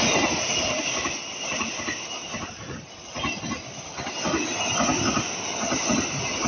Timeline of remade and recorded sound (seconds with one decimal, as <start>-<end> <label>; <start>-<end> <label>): 0.0-6.5 recorded